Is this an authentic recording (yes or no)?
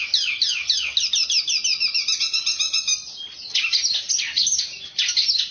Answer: yes